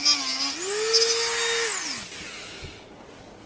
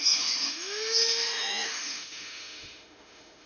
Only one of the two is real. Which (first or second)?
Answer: first